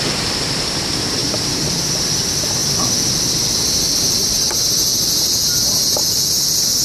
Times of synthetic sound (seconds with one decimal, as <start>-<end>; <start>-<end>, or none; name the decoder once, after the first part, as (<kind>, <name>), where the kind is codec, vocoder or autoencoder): 1.2-1.9 (vocoder, BigVGAN v2)